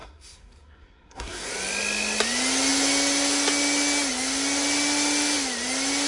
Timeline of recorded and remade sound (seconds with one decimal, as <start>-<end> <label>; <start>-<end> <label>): 0.0-1.5 remade; 1.5-6.1 recorded